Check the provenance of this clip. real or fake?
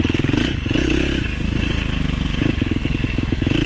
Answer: real